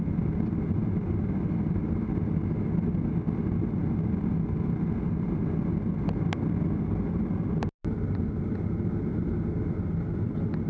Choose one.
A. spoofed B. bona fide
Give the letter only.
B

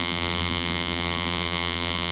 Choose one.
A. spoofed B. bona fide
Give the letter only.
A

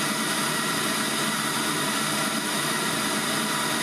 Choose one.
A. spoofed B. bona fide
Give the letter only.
B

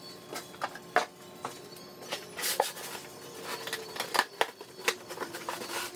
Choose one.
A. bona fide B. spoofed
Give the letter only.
A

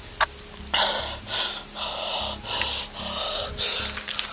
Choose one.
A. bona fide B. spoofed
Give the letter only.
A